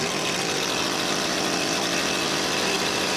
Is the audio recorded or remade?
recorded